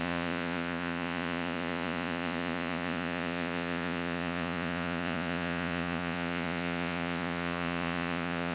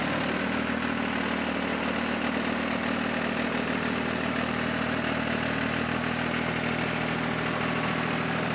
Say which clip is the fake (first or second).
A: first